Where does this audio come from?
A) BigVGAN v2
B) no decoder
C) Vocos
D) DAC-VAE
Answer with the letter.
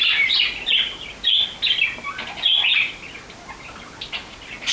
B